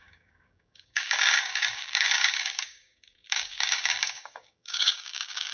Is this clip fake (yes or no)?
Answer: yes